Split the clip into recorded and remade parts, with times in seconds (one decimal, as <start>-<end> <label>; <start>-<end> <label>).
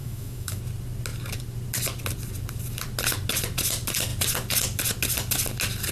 0.0-0.6 remade; 0.6-5.9 recorded